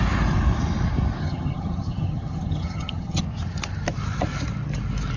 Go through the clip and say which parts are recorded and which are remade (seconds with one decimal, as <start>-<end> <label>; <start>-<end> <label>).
0.0-1.2 recorded; 1.2-3.2 remade; 3.2-5.2 recorded